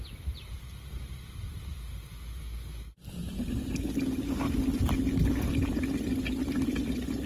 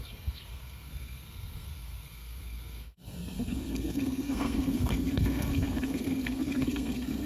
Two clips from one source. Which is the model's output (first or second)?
second